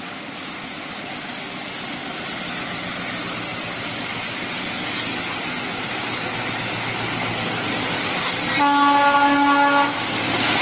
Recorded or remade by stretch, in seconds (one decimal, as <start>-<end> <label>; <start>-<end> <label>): 0.0-3.5 recorded; 3.5-4.7 remade; 4.7-10.6 recorded